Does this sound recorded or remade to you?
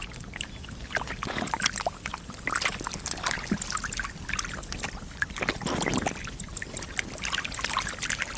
recorded